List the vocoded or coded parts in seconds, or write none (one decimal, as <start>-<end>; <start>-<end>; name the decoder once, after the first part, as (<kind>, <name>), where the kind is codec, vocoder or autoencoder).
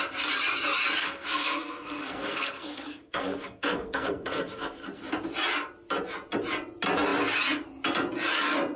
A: 1.0-5.0 (codec, SNAC)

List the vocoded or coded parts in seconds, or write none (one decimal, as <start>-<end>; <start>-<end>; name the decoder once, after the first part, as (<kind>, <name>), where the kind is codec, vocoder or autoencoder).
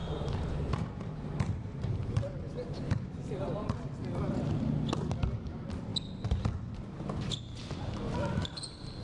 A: 0.0-3.4 (vocoder, BigVGAN v2)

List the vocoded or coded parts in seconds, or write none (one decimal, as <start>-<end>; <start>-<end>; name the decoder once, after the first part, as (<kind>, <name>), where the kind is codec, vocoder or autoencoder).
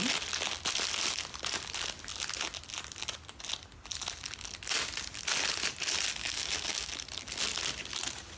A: 6.2-6.9 (codec, DAC)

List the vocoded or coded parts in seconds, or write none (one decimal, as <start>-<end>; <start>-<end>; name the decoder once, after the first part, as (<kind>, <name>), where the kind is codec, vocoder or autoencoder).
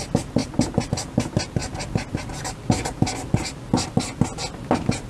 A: none